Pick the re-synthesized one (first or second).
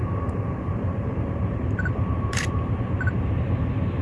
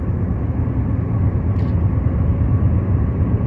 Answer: first